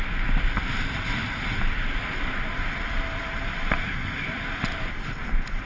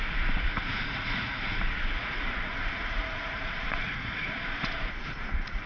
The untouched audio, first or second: first